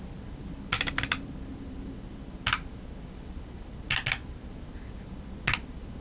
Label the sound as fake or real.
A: real